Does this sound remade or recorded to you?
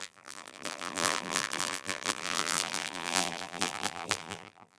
remade